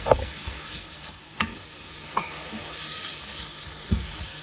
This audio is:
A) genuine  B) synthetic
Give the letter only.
B